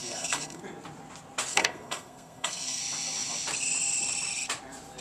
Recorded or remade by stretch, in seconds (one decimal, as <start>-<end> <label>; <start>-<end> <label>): 0.0-0.6 remade; 0.6-1.5 recorded; 1.5-2.8 remade; 2.8-5.0 recorded